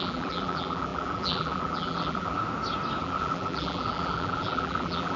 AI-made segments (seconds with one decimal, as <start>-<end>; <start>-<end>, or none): 0.0-2.4; 3.0-5.2